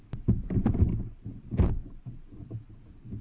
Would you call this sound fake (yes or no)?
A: no